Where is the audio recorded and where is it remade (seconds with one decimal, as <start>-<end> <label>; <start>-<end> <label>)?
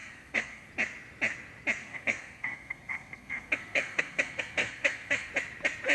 0.0-0.7 remade; 0.7-1.8 recorded; 1.8-5.3 remade; 5.3-5.9 recorded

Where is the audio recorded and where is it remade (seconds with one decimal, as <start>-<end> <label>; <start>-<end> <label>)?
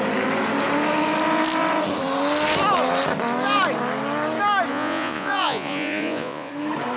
0.0-4.7 recorded; 4.7-6.5 remade; 6.5-7.0 recorded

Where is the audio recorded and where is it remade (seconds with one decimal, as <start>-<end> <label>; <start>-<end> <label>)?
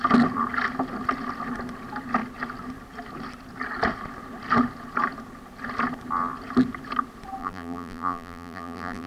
0.0-7.4 recorded; 7.4-9.1 remade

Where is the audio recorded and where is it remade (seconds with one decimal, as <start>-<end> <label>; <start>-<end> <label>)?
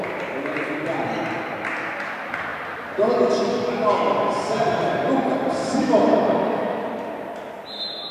0.0-5.6 recorded; 5.6-6.8 remade; 6.8-8.1 recorded